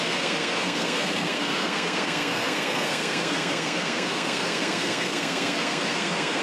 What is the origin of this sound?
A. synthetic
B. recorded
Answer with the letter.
A